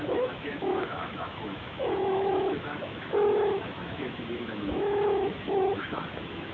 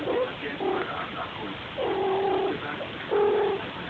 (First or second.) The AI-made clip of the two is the first